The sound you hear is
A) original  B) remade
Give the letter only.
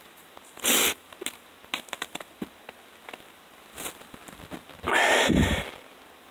A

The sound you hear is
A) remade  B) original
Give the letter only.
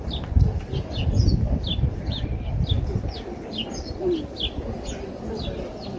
B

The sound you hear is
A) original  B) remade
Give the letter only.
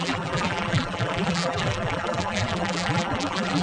B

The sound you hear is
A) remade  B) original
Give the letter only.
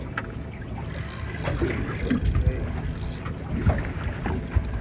B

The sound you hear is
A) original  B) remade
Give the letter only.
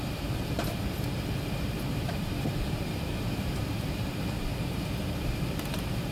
B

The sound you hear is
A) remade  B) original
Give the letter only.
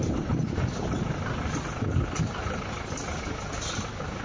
B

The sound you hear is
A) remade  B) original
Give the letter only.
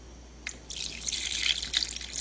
B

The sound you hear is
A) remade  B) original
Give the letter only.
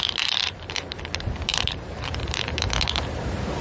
A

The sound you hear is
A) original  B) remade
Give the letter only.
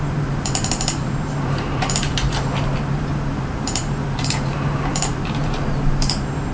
B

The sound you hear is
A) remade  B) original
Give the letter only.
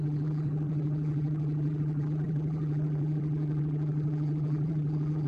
A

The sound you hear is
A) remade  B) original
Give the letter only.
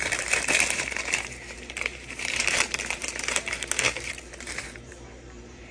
A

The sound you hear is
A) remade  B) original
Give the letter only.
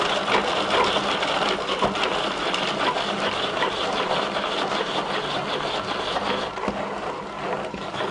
B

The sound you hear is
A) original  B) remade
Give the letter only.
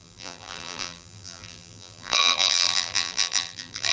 B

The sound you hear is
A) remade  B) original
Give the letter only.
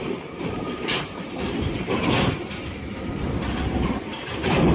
A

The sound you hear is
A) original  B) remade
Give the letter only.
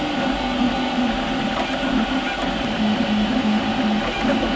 A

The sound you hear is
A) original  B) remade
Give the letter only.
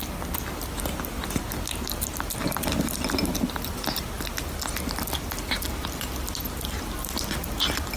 A